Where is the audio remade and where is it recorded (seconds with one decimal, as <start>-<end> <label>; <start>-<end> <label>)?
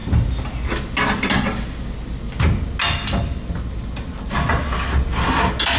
0.0-5.8 recorded